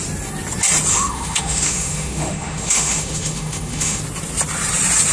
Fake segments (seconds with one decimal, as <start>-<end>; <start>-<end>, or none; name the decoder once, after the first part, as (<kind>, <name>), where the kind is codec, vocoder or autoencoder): 0.9-4.0 (autoencoder, DAC-VAE)